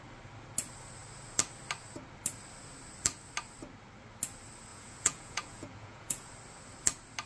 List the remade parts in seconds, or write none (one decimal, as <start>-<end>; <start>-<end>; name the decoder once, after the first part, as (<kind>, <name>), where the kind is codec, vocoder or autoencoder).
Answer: 4.7-6.3 (vocoder, Vocos)